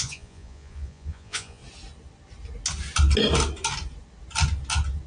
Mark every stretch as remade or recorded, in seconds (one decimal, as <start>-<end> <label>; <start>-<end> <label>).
0.0-1.6 remade; 1.6-5.1 recorded

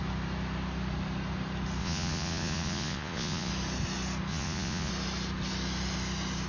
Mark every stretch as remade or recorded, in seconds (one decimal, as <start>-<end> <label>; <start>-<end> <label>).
0.0-1.8 recorded; 1.8-3.5 remade; 3.5-4.3 recorded; 4.3-4.9 remade; 4.9-6.5 recorded

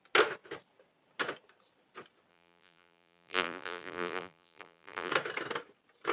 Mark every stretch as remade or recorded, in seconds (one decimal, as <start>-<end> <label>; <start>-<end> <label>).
0.0-2.3 recorded; 2.3-5.1 remade; 5.1-6.1 recorded

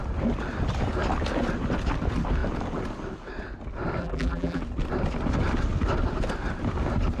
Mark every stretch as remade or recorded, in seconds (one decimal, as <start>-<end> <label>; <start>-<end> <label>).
0.0-4.0 recorded; 4.0-4.6 remade; 4.6-7.2 recorded